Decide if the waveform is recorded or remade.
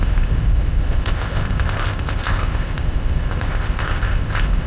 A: remade